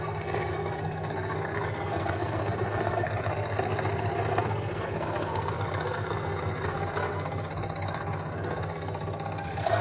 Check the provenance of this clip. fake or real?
fake